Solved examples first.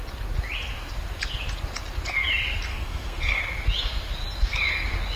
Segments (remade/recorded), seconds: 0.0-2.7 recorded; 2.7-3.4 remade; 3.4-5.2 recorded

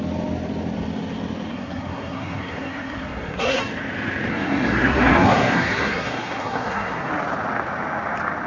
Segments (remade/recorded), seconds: 0.0-1.5 recorded; 1.5-3.6 remade; 3.6-4.3 recorded; 4.3-7.1 remade; 7.1-8.5 recorded